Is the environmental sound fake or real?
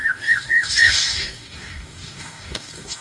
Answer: fake